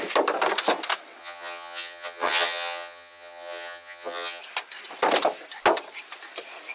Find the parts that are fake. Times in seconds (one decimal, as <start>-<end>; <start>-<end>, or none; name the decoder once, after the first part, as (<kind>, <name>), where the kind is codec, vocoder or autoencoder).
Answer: 1.2-4.4 (vocoder, HiFi-GAN)